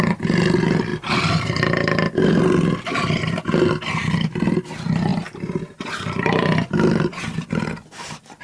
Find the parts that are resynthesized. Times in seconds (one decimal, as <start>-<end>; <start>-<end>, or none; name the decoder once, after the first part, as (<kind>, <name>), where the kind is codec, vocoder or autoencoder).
5.1-7.5 (vocoder, BigVGAN v2)